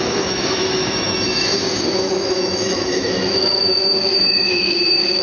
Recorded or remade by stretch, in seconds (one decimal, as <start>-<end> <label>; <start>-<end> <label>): 0.0-5.2 remade